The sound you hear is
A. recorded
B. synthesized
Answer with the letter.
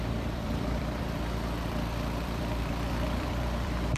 B